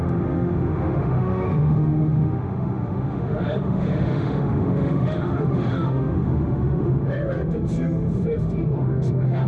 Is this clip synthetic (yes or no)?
yes